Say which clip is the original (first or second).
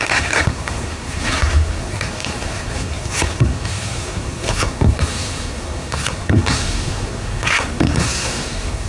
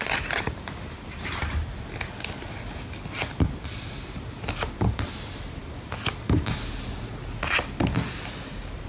second